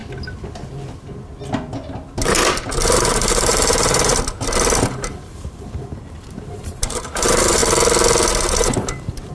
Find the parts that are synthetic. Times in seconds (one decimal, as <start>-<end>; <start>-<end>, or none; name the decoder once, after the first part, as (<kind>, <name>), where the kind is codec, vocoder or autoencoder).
3.1-4.1 (vocoder, BigVGAN v2); 4.8-7.6; 8.4-9.3